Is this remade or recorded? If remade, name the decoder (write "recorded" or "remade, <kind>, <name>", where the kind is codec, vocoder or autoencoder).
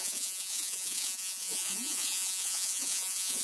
remade, vocoder, Vocos